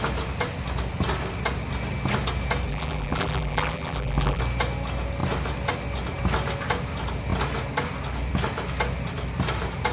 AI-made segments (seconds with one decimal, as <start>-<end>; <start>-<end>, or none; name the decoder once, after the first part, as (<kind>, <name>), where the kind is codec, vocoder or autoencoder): 2.7-4.4 (vocoder, BigVGAN v2)